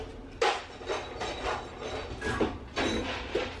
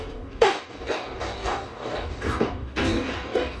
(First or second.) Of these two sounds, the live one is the first